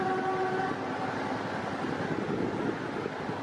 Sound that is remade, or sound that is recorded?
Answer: recorded